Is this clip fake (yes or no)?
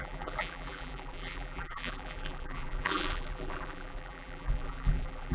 yes